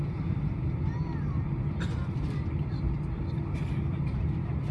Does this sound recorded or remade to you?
recorded